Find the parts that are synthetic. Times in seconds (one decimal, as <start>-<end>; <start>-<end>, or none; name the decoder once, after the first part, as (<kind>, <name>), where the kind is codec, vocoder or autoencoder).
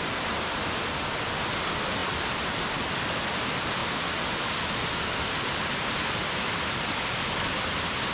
none